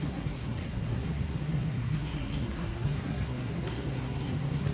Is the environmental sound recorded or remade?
remade